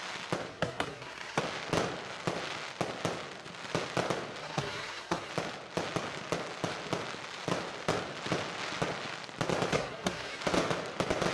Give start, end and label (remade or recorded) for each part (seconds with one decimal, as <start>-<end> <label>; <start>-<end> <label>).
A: 0.0-0.5 recorded; 0.5-1.4 remade; 1.4-4.4 recorded; 4.4-5.3 remade; 5.3-9.7 recorded; 9.7-10.4 remade; 10.4-11.3 recorded